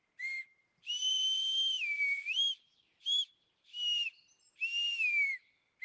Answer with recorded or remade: remade